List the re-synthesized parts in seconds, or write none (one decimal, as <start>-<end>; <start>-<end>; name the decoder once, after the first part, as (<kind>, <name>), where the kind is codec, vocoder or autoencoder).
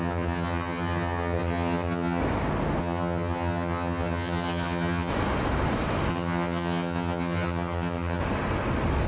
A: 0.0-2.2 (vocoder, HiFi-GAN); 2.8-5.1; 6.1-8.2